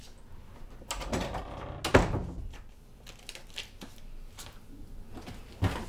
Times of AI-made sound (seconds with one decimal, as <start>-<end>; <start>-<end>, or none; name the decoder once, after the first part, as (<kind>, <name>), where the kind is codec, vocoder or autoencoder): none